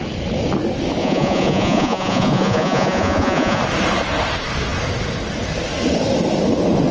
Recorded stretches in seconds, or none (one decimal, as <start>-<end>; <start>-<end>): 0.0-1.0; 3.6-6.9